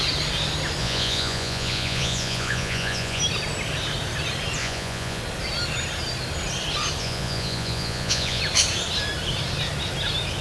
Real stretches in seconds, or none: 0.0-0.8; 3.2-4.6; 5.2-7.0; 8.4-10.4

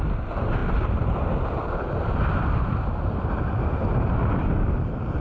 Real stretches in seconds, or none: 0.0-5.2

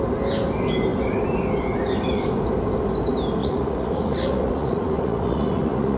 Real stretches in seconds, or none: 0.0-3.4

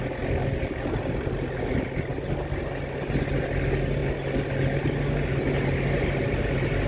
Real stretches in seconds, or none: 0.0-6.9

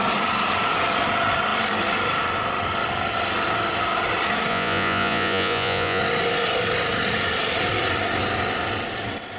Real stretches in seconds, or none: 0.0-4.5; 6.0-9.4

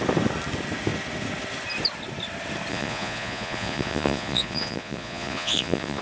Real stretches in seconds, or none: 0.0-2.7